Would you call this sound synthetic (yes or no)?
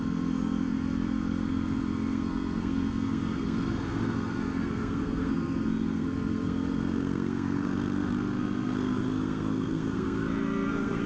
yes